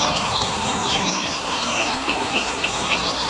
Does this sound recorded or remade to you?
remade